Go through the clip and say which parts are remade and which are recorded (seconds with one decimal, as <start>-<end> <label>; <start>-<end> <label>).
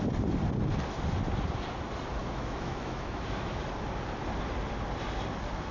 0.0-2.2 recorded; 2.2-3.6 remade; 3.6-5.7 recorded